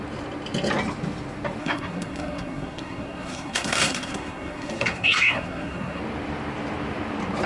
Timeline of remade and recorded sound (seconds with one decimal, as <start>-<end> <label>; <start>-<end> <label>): 0.0-1.6 recorded; 1.6-6.0 remade; 6.0-7.5 recorded